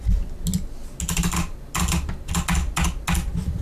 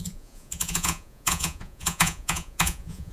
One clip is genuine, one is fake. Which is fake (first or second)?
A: second